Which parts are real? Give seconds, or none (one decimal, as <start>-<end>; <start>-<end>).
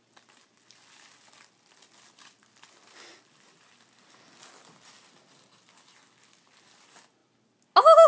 0.0-8.1